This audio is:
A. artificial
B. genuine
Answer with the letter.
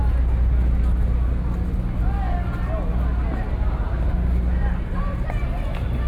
B